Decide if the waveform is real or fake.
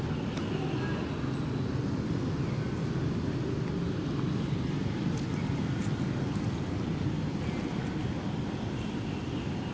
real